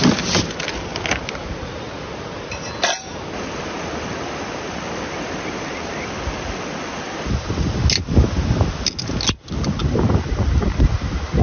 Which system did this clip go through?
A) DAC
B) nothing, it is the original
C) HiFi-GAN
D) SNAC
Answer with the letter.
B